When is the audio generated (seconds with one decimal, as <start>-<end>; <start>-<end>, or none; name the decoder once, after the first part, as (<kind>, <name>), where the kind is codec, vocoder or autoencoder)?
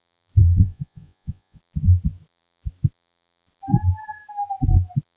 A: 0.4-1.6 (vocoder, Vocos)